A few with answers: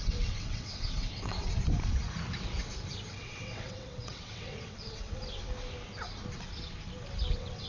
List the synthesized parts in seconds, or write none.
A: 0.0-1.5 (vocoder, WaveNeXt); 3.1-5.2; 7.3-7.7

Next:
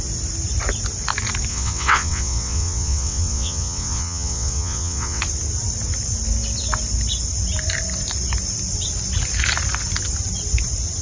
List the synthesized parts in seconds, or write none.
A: 1.5-5.2 (vocoder, WaveNeXt)

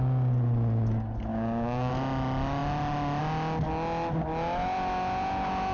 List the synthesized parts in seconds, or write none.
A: 1.3-1.9 (codec, DAC)

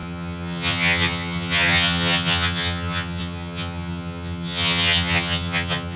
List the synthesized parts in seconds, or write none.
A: 0.0-6.0 (vocoder, HiFi-GAN)

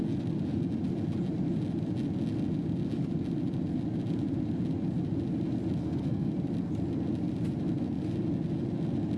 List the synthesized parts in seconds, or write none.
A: 5.8-6.3 (codec, SNAC)